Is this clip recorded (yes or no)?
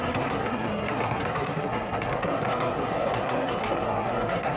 no